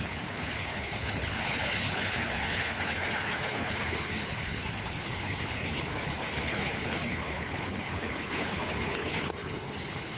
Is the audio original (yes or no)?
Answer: no